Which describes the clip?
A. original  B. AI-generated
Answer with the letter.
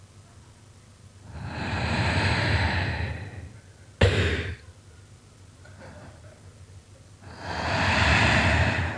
A